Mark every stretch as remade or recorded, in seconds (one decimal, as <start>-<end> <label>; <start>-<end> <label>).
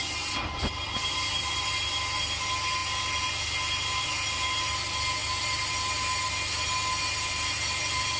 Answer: 0.0-8.2 recorded